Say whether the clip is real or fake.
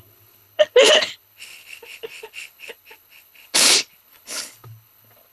fake